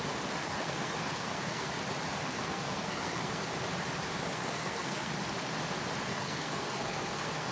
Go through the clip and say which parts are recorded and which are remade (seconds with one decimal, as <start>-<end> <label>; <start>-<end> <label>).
0.0-0.4 recorded; 0.4-1.7 remade; 1.7-2.2 recorded; 2.2-3.5 remade; 3.5-4.3 recorded; 4.3-5.1 remade; 5.1-6.1 recorded; 6.1-7.5 remade